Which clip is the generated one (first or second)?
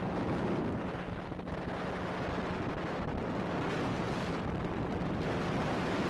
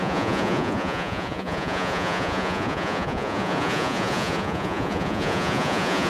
second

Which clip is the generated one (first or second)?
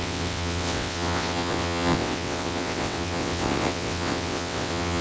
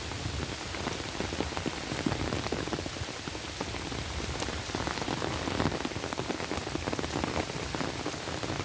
first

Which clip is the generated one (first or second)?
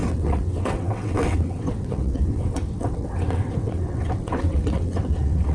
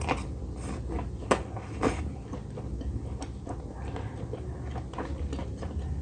first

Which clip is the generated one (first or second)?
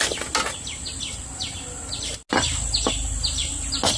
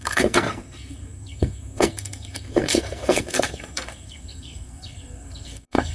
second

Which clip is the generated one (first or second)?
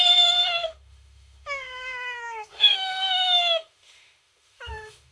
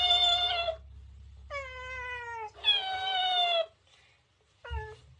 first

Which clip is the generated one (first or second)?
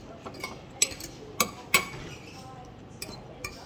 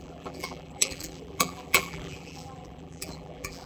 second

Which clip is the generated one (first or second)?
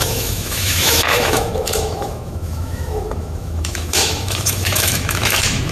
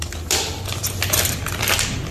first